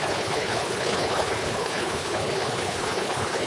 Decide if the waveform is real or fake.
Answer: fake